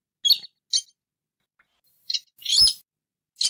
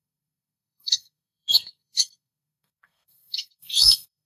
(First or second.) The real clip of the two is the first